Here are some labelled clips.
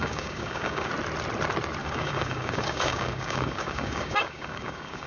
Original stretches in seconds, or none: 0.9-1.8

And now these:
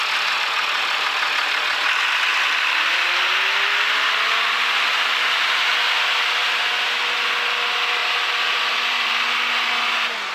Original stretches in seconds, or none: 0.0-10.3

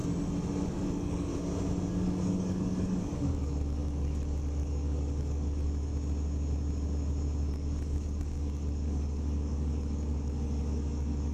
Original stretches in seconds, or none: 0.0-0.7; 1.3-1.9; 5.9-7.5

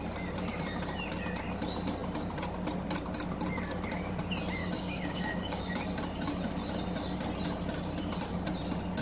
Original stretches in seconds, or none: 0.0-4.6; 5.8-9.0